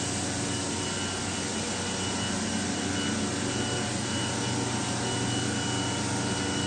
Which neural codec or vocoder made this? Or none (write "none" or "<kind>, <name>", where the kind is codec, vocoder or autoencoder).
none